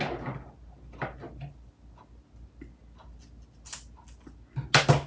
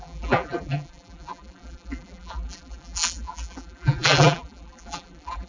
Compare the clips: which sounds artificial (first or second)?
second